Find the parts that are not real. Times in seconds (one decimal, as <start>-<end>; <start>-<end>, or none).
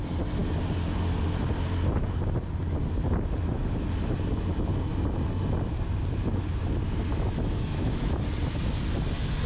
7.1-8.1